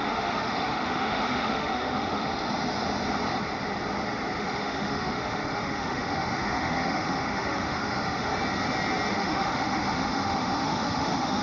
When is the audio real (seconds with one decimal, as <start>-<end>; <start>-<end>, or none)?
2.3-4.4; 8.3-9.1